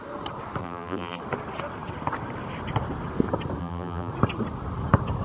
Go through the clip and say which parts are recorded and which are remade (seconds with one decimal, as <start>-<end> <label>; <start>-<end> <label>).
0.0-0.6 recorded; 0.6-1.2 remade; 1.2-3.6 recorded; 3.6-4.1 remade; 4.1-5.2 recorded